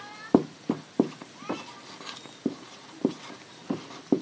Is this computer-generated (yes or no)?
no